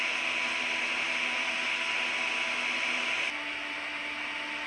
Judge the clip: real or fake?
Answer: real